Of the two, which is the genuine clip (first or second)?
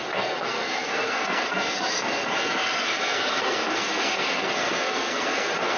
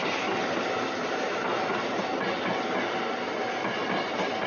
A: second